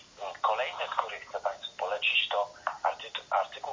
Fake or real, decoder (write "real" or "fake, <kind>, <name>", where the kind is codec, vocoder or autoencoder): real